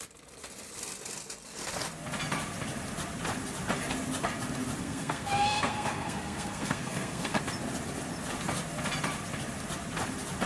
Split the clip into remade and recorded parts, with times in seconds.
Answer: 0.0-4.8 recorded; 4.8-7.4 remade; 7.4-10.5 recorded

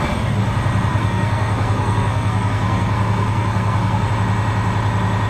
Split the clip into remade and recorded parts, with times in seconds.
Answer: 0.0-0.9 recorded; 0.9-4.1 remade; 4.1-5.3 recorded

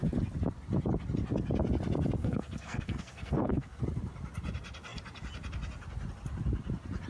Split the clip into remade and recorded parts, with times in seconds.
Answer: 0.0-2.2 recorded; 2.2-3.8 remade; 3.8-7.1 recorded